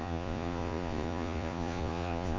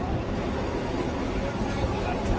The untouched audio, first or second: second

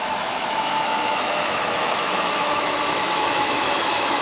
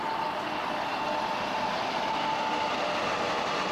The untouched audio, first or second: second